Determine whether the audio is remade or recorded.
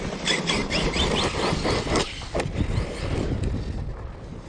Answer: recorded